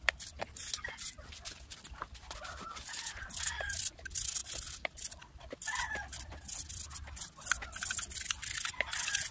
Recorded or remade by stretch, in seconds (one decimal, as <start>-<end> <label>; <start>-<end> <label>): 0.0-9.3 recorded